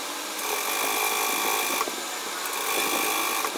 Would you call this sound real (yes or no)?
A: yes